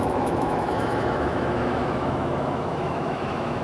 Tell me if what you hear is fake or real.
fake